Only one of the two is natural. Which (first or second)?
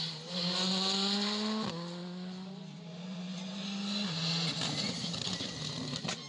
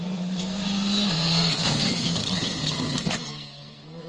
first